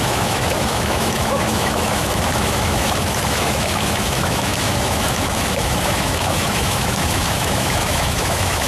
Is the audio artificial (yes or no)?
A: yes